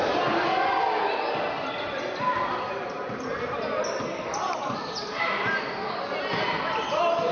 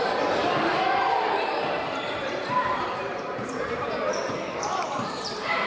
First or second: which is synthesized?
second